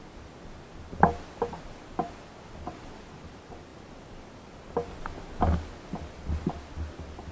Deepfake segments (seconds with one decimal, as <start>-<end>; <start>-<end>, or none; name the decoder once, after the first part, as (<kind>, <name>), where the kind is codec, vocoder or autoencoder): none